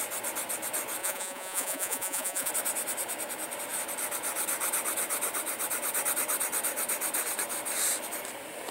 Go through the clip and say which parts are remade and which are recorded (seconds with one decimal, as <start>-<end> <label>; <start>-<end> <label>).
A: 0.0-1.0 recorded; 1.0-2.5 remade; 2.5-8.7 recorded